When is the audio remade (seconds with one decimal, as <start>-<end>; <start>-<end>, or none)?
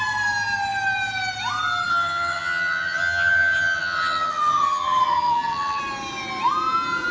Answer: 1.9-5.8